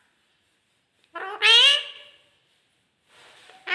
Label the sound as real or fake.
real